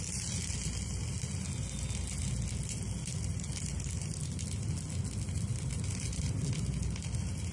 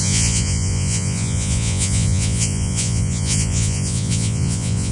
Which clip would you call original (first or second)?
first